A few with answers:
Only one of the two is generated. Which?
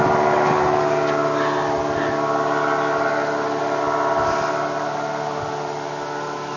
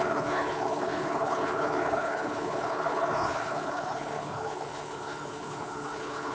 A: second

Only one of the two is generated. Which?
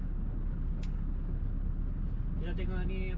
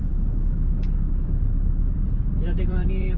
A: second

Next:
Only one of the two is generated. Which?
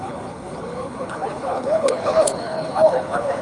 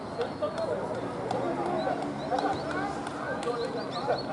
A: first